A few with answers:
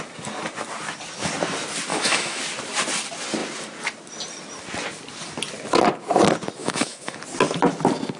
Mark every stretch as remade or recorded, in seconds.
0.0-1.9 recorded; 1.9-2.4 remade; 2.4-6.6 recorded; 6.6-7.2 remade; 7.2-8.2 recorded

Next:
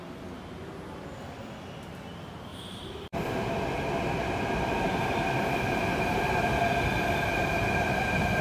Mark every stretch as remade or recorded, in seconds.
0.0-2.5 recorded; 2.5-6.6 remade; 6.6-8.4 recorded

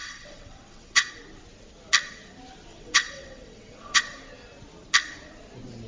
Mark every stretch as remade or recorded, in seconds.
0.0-1.1 remade; 1.1-2.7 recorded; 2.7-4.0 remade; 4.0-5.9 recorded